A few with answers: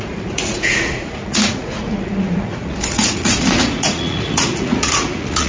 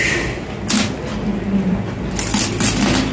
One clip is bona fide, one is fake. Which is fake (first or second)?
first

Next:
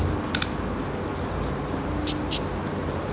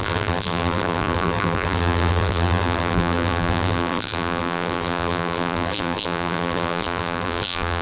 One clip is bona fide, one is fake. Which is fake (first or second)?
second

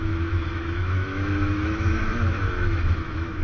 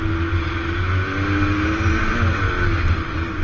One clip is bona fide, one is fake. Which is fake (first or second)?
first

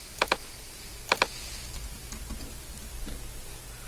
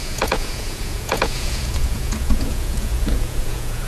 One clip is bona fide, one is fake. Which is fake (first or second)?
second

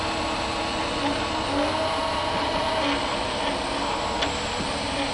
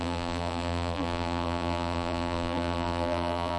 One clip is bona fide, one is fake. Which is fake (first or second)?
second